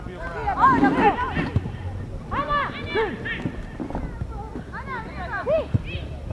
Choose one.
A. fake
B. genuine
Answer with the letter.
B